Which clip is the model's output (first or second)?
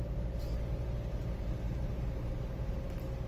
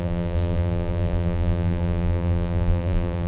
second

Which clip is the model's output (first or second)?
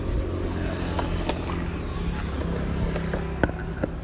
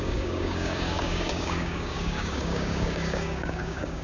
second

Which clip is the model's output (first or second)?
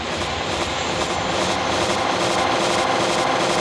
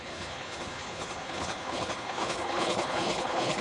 second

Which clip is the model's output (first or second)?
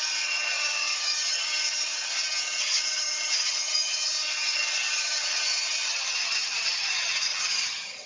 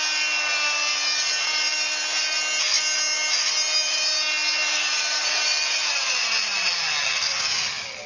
first